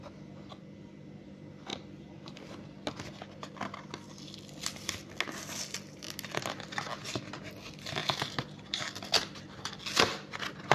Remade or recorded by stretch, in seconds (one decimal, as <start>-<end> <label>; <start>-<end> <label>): 0.0-10.7 recorded

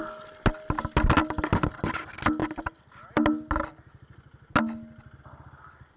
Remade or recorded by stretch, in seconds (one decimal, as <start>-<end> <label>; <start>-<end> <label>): 0.0-6.0 recorded

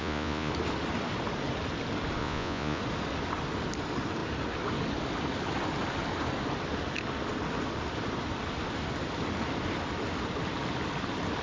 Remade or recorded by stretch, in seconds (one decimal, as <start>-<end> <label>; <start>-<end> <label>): 0.0-0.5 remade; 0.5-2.2 recorded; 2.2-2.8 remade; 2.8-11.4 recorded

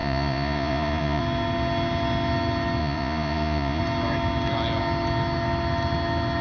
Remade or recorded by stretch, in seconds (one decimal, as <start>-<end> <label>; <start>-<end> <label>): 0.0-1.2 remade; 1.2-2.8 recorded; 2.8-3.8 remade; 3.8-6.4 recorded

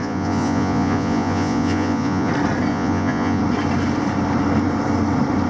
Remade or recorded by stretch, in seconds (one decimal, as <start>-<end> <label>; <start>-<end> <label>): 0.0-2.3 remade; 2.3-2.7 recorded; 2.7-3.4 remade; 3.4-5.5 recorded

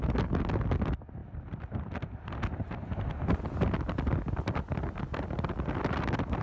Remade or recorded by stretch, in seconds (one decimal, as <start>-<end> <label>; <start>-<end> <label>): 0.0-6.4 recorded

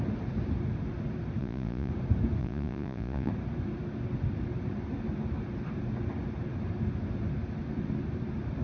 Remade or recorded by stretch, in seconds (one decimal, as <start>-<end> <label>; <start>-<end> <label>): 0.0-1.4 recorded; 1.4-1.9 remade; 1.9-2.4 recorded; 2.4-3.3 remade; 3.3-8.6 recorded

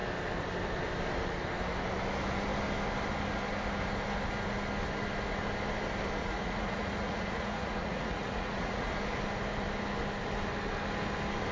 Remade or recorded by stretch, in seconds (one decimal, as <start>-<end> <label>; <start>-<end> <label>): 0.0-6.2 recorded; 6.2-8.9 remade; 8.9-11.5 recorded